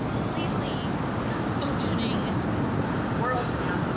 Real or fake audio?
real